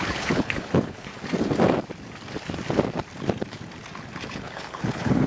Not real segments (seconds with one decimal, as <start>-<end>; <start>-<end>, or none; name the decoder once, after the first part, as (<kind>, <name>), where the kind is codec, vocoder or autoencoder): 0.0-1.1 (codec, HILCodec); 4.3-5.3